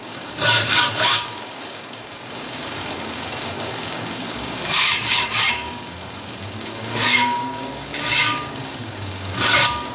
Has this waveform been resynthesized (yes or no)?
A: yes